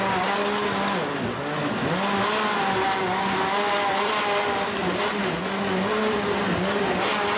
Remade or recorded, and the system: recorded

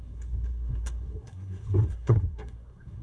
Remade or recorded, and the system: remade, codec, SNAC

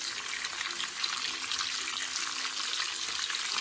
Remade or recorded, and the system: recorded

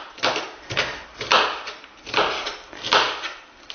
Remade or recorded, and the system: recorded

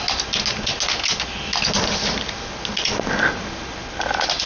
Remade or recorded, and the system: recorded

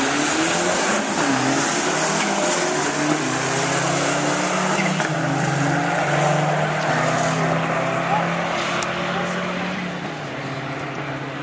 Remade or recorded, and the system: recorded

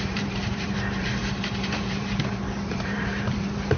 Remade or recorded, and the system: remade, vocoder, BigVGAN v2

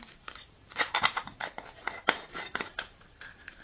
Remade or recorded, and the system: remade, vocoder, BigVGAN v2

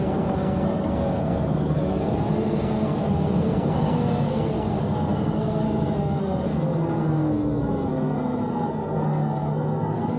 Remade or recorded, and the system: remade, codec, SNAC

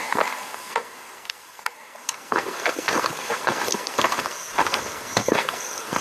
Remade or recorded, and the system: remade, codec, SNAC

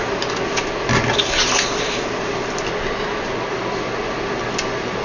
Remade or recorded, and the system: recorded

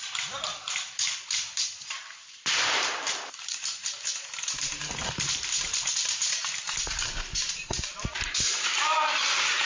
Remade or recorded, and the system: remade, vocoder, BigVGAN v2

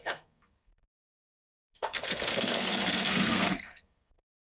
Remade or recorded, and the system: remade, codec, SNAC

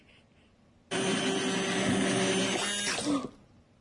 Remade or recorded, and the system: recorded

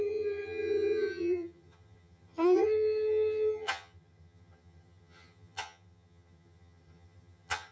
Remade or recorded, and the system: remade, vocoder, HiFi-GAN